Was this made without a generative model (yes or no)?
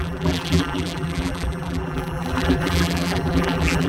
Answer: no